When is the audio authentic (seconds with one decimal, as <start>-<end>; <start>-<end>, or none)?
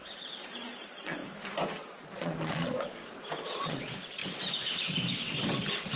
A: 1.2-1.8; 3.0-3.6; 4.2-6.0